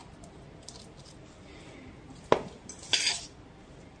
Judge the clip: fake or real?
real